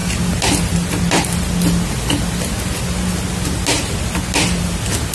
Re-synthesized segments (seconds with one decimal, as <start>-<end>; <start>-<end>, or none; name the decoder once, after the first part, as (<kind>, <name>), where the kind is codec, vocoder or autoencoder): none